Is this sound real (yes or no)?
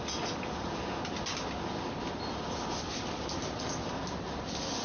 yes